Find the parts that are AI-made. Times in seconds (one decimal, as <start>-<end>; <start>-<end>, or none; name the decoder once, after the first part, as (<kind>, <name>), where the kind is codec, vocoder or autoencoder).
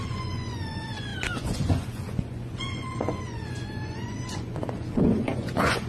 0.0-5.9 (vocoder, Vocos)